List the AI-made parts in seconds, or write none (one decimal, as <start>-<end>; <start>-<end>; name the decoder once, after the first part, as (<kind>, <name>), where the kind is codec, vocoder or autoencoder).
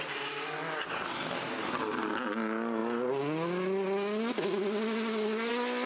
none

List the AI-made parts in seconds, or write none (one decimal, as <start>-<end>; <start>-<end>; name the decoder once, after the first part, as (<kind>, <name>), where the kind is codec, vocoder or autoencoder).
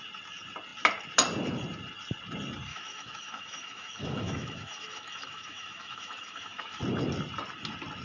2.7-6.8 (autoencoder, DAC-VAE)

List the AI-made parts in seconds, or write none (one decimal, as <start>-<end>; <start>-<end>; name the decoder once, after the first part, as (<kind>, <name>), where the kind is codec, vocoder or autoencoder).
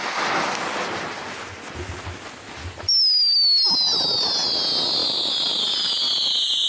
none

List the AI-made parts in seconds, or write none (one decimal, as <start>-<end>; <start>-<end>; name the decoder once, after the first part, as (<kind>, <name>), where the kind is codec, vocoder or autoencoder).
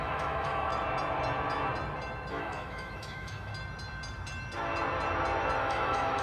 0.0-0.7 (autoencoder, DAC-VAE); 2.3-3.5; 5.6-6.2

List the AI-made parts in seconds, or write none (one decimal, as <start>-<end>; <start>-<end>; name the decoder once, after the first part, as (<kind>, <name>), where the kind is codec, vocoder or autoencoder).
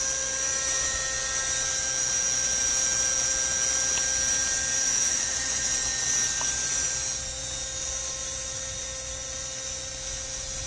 4.8-5.7 (autoencoder, DAC-VAE)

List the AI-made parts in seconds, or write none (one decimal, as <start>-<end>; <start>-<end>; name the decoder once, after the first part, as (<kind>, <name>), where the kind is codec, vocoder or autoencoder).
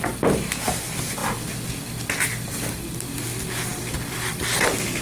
none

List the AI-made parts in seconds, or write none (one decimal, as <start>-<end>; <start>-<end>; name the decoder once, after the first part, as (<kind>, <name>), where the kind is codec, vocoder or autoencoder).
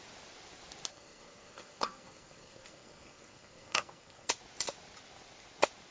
0.9-4.3 (codec, SNAC)